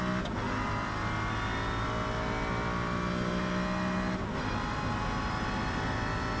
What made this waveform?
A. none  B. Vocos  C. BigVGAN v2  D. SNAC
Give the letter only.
A